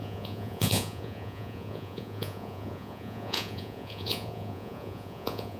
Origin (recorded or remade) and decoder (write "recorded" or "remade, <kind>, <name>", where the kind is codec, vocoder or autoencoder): remade, vocoder, Vocos